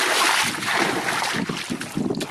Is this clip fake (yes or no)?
no